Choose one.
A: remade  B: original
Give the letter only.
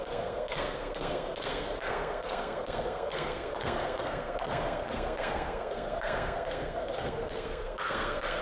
A